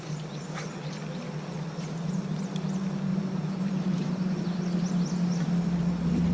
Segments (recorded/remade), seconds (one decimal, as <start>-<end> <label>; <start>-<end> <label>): 0.0-3.1 recorded; 3.1-4.9 remade; 4.9-6.3 recorded